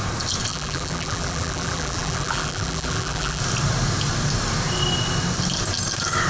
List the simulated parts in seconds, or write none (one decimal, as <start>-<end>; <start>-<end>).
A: 0.5-3.4